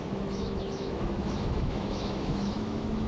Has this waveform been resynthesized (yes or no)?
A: yes